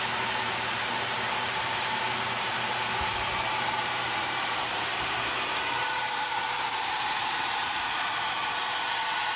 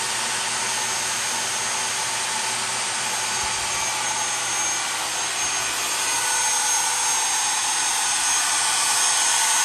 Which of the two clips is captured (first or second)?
second